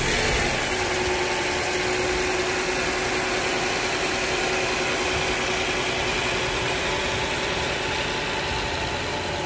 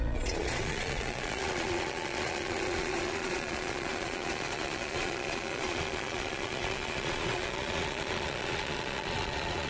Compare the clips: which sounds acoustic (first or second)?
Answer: first